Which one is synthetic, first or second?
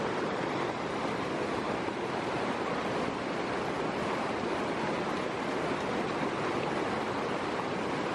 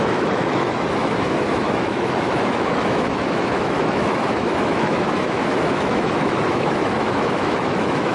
second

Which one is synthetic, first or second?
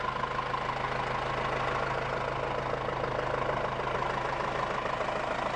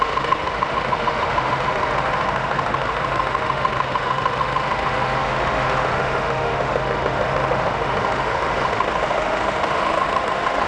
second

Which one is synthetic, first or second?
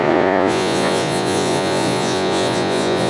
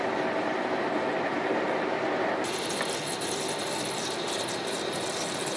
first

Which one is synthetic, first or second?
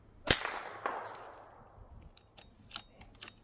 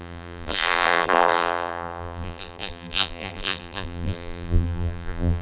second